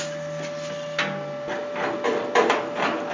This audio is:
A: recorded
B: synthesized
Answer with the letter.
A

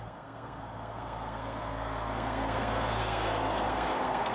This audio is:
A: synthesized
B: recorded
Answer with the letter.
A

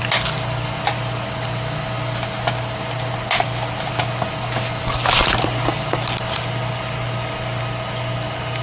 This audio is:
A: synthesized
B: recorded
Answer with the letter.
B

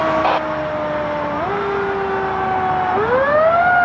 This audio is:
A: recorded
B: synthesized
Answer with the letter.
A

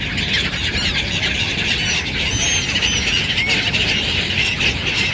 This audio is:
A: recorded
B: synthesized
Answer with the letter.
A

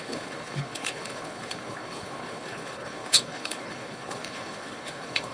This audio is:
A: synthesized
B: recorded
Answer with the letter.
A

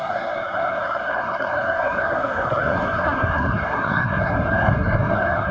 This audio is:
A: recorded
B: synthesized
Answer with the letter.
B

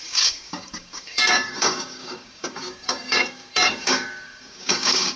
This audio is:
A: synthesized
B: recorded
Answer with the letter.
A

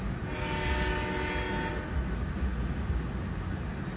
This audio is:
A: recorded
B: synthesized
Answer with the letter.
A